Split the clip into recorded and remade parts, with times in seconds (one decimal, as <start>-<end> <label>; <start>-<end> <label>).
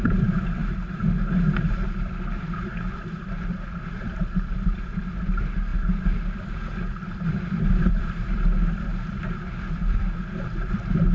0.0-0.6 remade; 0.6-1.7 recorded; 1.7-11.1 remade